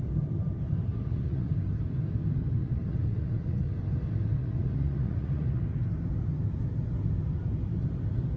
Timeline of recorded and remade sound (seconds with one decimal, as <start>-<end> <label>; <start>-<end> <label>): 0.0-0.9 recorded; 0.9-1.5 remade; 1.5-2.6 recorded; 2.6-3.7 remade; 3.7-4.4 recorded; 4.4-5.6 remade; 5.6-8.4 recorded